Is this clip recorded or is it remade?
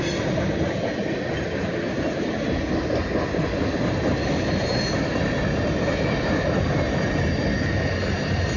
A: recorded